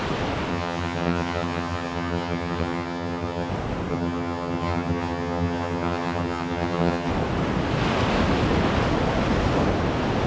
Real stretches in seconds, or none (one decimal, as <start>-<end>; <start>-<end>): 0.0-0.5; 3.5-3.9; 7.1-10.3